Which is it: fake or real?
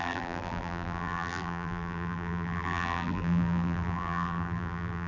fake